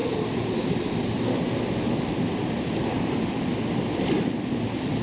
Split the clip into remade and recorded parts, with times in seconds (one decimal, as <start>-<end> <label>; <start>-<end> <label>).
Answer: 0.0-5.0 recorded